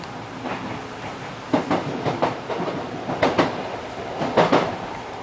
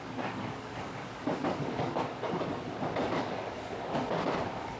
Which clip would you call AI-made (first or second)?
second